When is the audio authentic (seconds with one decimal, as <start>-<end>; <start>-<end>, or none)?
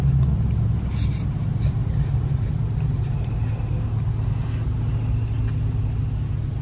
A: 0.0-6.6